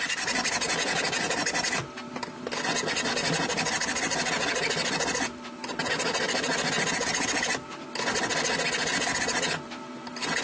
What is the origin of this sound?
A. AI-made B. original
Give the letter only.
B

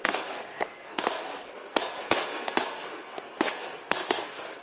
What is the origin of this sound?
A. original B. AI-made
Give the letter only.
B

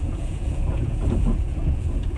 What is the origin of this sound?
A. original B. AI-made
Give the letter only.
B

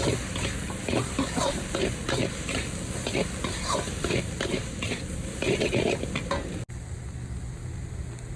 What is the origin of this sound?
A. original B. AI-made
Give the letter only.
A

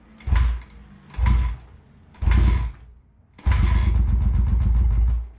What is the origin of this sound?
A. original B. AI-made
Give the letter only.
A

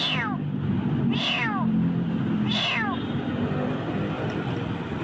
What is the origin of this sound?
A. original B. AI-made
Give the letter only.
A